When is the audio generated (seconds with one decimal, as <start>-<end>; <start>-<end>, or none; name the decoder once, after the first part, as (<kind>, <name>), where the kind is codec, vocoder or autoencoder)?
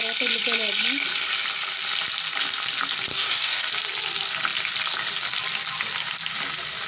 3.1-3.7 (codec, DAC)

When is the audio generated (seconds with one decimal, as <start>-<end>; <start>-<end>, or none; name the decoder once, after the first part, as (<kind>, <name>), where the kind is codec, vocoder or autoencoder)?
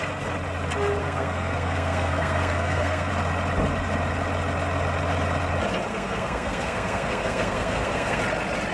1.0-3.1 (codec, SNAC); 5.9-8.2